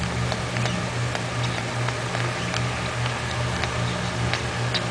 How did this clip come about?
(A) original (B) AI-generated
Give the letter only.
A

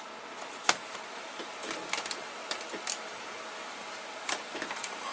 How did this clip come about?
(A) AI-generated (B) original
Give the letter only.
B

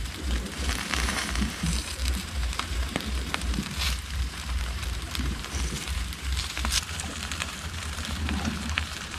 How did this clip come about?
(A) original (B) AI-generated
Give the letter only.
B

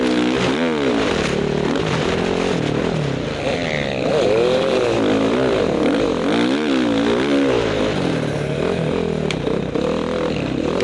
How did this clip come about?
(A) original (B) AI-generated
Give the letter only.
A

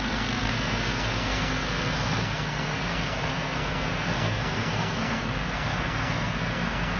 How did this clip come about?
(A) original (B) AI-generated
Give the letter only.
B